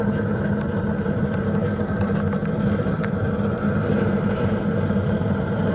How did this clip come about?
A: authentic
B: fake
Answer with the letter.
A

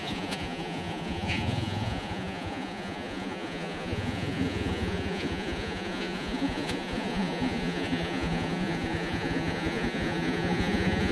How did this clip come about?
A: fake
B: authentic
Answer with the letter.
A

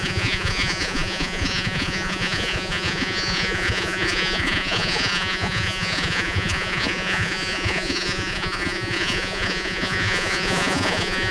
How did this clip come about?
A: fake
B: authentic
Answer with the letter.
A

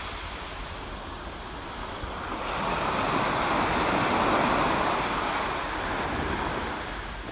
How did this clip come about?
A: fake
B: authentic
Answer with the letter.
B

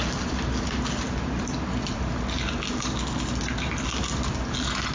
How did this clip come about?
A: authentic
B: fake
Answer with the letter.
A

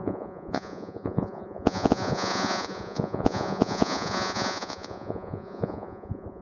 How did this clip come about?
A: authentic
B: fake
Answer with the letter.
B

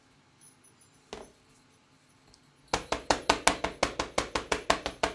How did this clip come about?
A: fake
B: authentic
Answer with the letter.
B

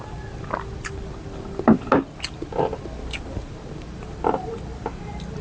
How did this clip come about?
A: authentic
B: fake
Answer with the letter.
A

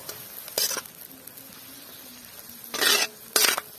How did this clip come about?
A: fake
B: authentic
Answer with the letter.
B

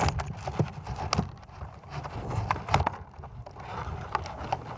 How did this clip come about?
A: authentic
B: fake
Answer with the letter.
A